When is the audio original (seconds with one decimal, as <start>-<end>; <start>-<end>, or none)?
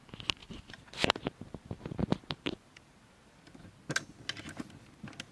0.0-0.4; 3.6-5.3